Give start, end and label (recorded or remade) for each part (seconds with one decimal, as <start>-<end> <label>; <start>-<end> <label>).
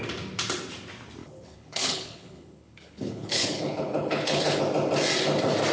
0.0-1.2 recorded; 1.2-4.6 remade; 4.6-5.7 recorded